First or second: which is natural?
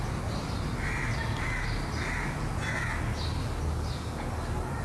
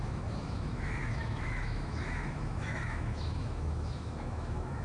first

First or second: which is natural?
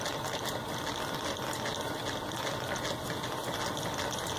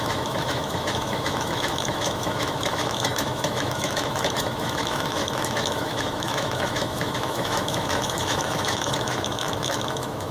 first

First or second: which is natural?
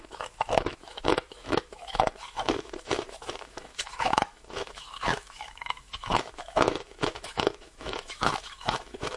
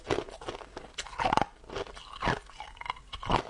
second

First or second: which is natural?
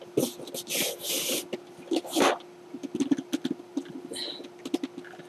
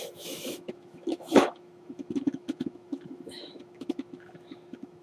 first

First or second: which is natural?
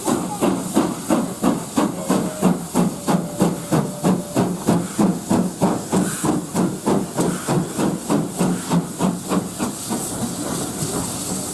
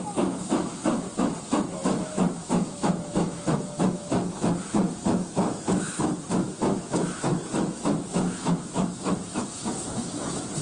first